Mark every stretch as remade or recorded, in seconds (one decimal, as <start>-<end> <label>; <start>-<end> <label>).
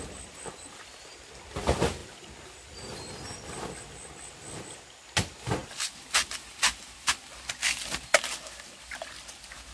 0.0-9.7 recorded